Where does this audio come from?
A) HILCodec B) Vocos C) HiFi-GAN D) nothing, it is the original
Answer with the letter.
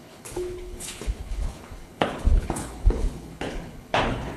A